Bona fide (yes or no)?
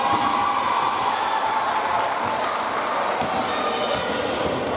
yes